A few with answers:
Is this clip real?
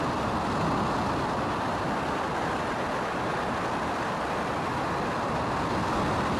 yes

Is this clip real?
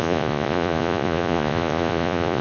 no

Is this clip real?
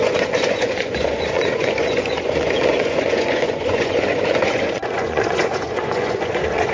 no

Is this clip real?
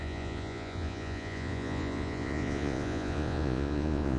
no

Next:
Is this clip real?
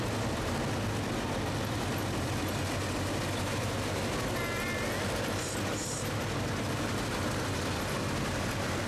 yes